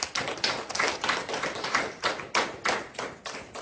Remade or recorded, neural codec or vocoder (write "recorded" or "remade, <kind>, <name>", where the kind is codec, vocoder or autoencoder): recorded